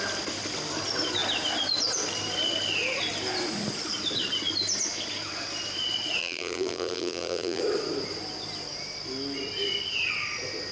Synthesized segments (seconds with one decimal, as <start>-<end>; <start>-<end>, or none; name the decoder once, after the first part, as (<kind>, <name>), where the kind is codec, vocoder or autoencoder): 6.2-7.6 (vocoder, BigVGAN v2)